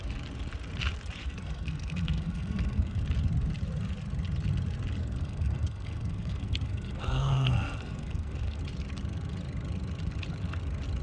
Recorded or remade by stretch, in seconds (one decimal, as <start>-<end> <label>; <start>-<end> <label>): 0.0-1.2 recorded; 1.2-3.0 remade; 3.0-5.0 recorded; 5.0-8.6 remade; 8.6-11.0 recorded